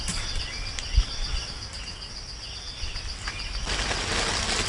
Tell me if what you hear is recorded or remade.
recorded